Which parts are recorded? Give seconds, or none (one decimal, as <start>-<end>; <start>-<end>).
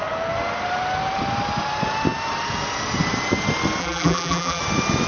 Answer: 0.0-3.8; 4.6-5.1